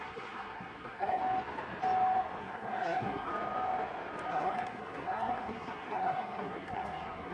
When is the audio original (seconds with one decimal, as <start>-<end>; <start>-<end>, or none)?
1.2-2.4; 3.3-4.3